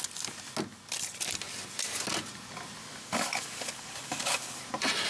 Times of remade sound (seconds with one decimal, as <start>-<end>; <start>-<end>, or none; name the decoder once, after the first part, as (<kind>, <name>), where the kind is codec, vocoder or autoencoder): 2.8-4.6 (codec, DAC)